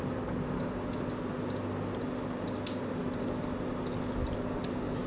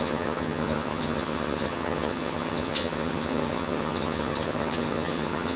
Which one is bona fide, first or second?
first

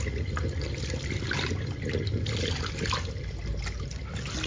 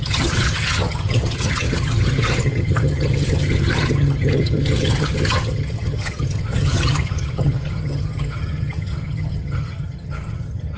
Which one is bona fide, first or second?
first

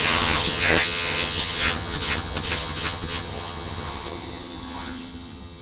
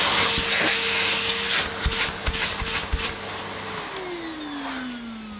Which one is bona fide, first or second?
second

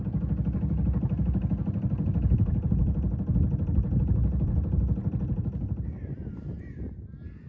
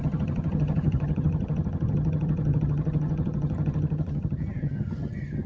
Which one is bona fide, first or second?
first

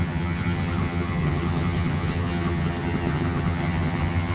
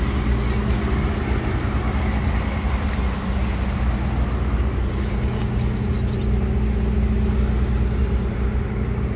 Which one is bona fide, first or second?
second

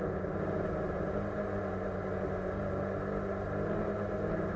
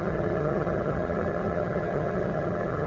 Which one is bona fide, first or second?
first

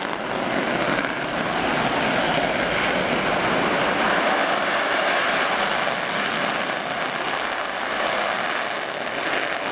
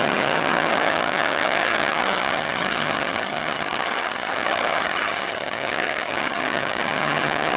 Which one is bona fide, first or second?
first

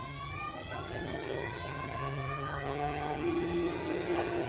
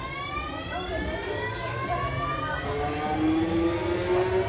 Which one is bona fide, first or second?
second